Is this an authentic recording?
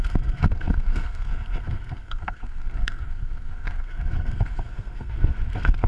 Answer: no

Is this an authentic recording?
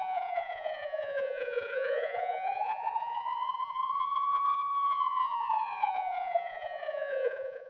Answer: no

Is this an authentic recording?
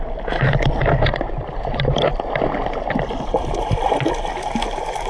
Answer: yes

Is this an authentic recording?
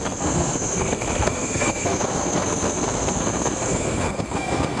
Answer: no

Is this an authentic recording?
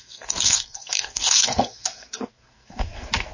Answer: no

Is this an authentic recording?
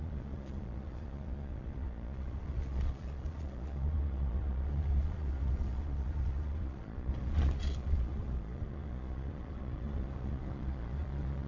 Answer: no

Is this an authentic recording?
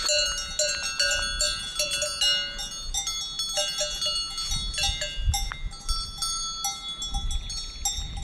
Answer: yes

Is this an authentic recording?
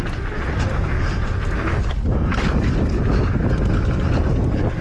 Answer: yes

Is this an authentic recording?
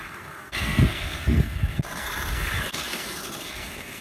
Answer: no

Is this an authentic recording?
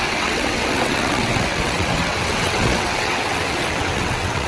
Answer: no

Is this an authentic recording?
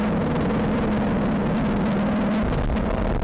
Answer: yes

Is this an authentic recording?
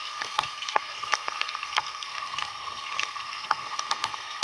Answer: no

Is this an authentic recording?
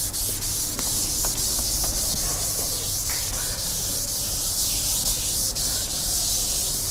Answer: yes